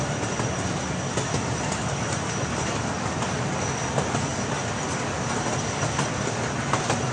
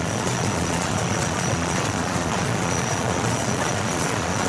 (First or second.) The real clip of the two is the first